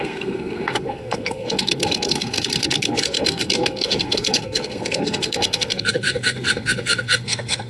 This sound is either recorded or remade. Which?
remade